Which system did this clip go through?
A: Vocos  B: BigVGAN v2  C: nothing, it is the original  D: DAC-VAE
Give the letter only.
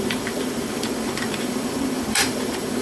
B